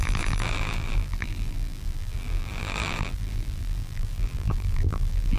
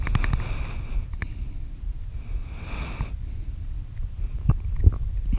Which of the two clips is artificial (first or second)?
first